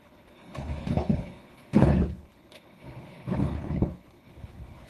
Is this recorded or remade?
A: remade